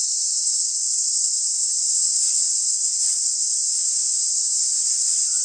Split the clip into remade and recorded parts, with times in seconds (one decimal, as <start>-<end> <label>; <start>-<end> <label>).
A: 0.0-3.5 remade; 3.5-4.3 recorded; 4.3-5.4 remade